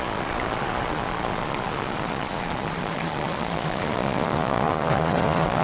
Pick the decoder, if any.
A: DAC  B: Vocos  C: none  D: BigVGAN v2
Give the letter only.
B